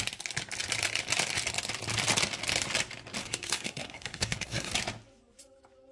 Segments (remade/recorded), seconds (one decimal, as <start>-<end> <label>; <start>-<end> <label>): 0.0-3.2 recorded; 3.2-4.7 remade; 4.7-5.9 recorded